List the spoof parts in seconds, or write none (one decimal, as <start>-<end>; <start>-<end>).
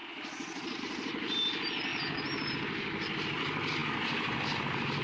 0.0-0.8